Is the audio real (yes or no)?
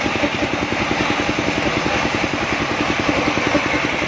yes